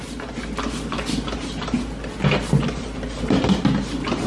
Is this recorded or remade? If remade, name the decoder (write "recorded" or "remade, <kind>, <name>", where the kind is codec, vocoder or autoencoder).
recorded